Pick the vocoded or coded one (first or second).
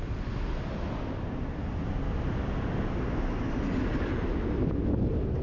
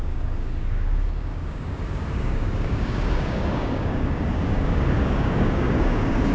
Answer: second